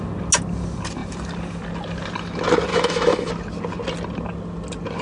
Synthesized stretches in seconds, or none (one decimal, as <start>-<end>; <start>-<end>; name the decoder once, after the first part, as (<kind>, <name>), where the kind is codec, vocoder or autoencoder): 2.7-3.3 (autoencoder, DAC-VAE)